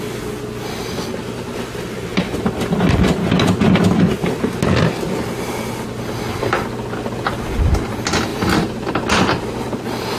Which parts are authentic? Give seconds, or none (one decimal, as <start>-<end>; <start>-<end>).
0.0-8.3; 9.6-10.2